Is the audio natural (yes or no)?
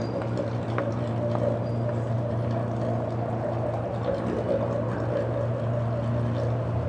yes